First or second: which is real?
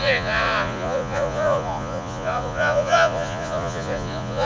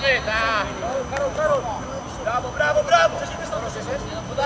second